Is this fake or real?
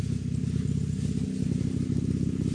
real